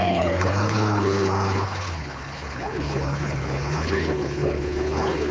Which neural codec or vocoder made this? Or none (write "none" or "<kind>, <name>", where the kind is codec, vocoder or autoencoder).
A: codec, HILCodec